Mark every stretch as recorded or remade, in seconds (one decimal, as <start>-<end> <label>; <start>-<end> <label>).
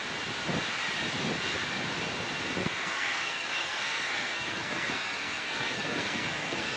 0.0-2.6 recorded; 2.6-6.8 remade